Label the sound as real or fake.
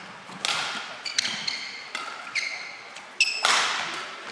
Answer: real